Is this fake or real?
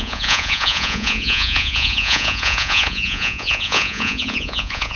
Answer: fake